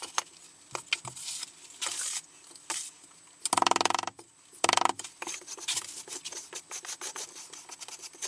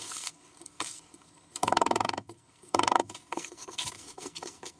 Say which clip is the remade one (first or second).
second